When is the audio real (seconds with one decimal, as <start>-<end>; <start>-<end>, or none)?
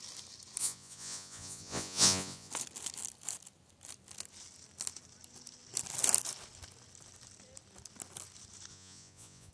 0.0-0.6; 2.5-8.7